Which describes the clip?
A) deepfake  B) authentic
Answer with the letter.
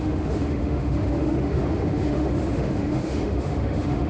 A